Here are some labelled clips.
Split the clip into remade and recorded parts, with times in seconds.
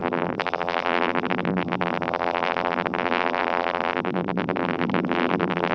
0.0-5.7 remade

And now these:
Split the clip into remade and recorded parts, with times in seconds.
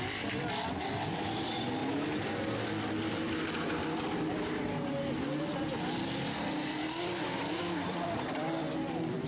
0.0-1.8 remade; 1.8-7.0 recorded; 7.0-9.3 remade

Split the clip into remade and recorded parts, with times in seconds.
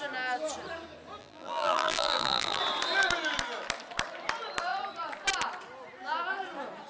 0.0-1.2 recorded; 1.2-2.6 remade; 2.6-6.9 recorded